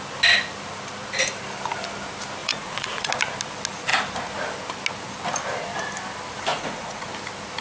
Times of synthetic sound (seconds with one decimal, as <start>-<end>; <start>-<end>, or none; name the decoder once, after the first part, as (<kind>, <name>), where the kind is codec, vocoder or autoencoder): 2.4-3.1 (vocoder, Vocos); 6.5-7.1